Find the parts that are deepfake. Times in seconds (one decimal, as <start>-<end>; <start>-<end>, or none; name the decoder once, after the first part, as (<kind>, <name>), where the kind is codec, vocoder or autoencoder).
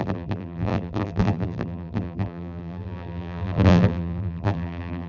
0.0-5.1 (vocoder, BigVGAN v2)